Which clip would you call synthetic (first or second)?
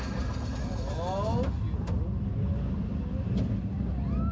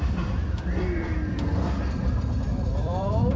second